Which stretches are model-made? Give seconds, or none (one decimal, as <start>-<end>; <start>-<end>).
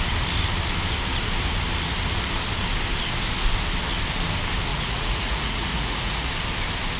4.7-6.3